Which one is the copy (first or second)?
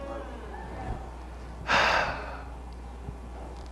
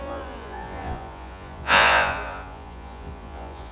second